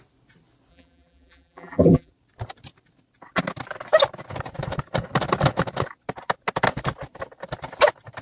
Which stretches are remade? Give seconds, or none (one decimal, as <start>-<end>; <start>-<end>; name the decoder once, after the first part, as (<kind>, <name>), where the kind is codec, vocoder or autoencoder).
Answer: 0.7-2.1 (vocoder, BigVGAN v2)